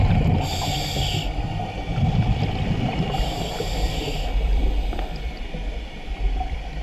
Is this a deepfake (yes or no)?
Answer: no